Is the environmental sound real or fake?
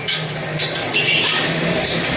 fake